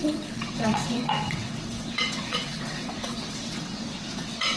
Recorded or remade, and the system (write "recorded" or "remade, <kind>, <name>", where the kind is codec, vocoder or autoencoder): remade, vocoder, WaveNeXt